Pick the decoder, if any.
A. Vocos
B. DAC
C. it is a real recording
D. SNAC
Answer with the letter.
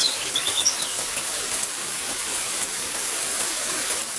B